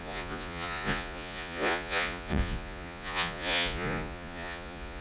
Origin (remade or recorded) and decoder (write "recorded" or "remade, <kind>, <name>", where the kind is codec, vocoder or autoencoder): remade, vocoder, Vocos